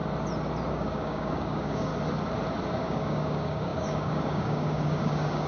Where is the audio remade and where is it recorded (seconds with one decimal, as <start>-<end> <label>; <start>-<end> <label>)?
0.0-0.7 recorded; 0.7-1.9 remade; 1.9-2.7 recorded; 2.7-5.5 remade